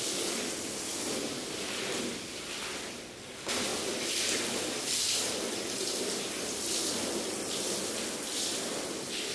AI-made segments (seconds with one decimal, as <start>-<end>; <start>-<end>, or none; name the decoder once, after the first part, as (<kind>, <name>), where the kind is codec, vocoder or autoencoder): none